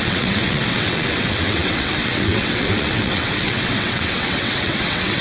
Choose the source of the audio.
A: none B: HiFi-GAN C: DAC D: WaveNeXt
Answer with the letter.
D